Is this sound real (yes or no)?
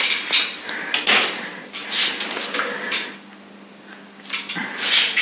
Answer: yes